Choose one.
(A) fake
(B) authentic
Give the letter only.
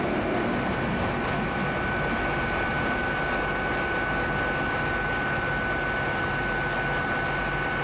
B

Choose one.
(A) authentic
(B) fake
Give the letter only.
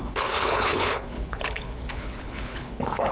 B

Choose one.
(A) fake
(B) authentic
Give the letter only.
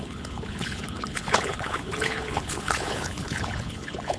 A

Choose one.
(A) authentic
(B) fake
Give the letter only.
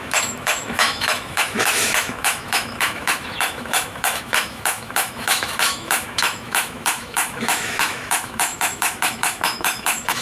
B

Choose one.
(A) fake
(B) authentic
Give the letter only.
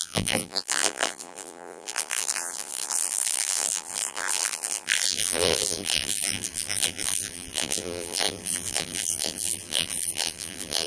A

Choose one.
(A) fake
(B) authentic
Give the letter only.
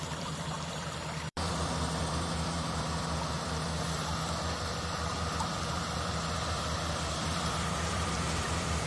A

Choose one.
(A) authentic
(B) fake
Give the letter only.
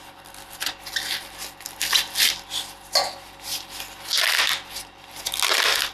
A